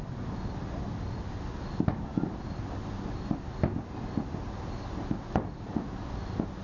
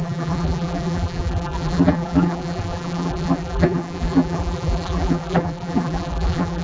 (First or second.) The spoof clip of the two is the second